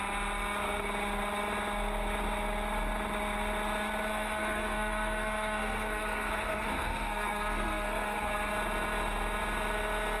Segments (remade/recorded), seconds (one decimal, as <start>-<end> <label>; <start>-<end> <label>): 0.0-4.1 recorded; 4.1-8.5 remade; 8.5-10.2 recorded